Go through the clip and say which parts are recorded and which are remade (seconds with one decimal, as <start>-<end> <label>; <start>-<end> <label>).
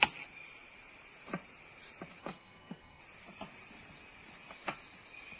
0.0-2.2 recorded; 2.2-3.0 remade; 3.0-5.4 recorded